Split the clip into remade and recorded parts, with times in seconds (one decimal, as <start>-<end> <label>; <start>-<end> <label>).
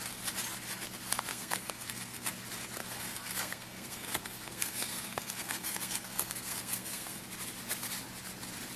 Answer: 0.0-1.3 recorded; 1.3-2.3 remade; 2.3-2.8 recorded; 2.8-7.2 remade; 7.2-8.8 recorded